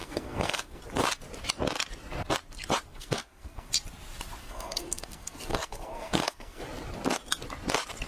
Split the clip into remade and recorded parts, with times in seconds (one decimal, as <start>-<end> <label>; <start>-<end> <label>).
0.0-0.8 remade; 0.8-2.9 recorded; 2.9-3.7 remade; 3.7-4.4 recorded; 4.4-6.6 remade; 6.6-8.1 recorded